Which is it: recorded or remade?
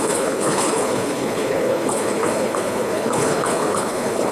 remade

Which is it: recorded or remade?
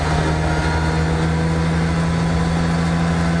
recorded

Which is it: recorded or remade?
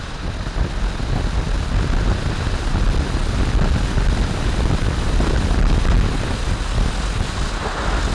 recorded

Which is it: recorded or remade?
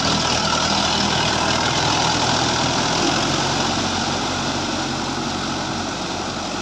recorded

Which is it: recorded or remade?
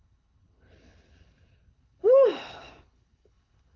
remade